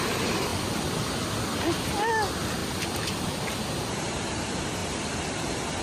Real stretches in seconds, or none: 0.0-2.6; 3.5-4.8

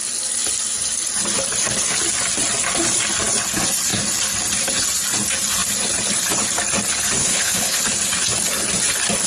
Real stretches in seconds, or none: 0.0-7.2; 7.8-9.3

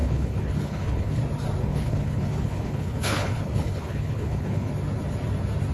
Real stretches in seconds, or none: 1.2-1.6; 4.7-5.7